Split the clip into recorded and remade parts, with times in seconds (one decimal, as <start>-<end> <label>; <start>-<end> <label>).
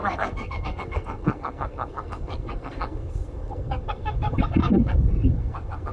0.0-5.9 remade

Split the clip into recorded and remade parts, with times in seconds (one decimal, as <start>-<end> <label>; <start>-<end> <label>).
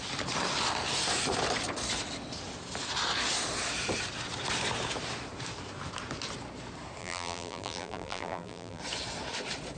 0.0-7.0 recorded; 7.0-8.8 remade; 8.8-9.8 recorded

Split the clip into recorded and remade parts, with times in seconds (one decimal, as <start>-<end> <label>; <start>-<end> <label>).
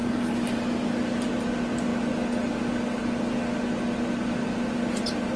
0.0-1.3 remade; 1.3-5.4 recorded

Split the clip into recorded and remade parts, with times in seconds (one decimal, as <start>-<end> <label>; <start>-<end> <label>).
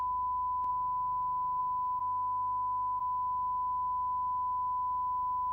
0.0-2.0 recorded; 2.0-3.0 remade; 3.0-5.5 recorded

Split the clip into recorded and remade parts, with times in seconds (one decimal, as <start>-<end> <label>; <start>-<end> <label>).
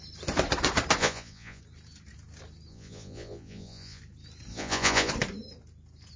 0.0-1.0 recorded; 1.0-1.6 remade; 1.6-2.7 recorded; 2.7-4.0 remade; 4.0-4.5 recorded; 4.5-5.1 remade; 5.1-6.2 recorded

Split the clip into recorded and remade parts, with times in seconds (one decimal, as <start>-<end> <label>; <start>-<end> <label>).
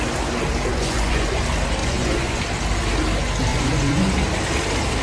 0.0-0.7 recorded; 0.7-1.4 remade; 1.4-1.8 recorded; 1.8-2.4 remade; 2.4-3.5 recorded; 3.5-4.1 remade; 4.1-5.0 recorded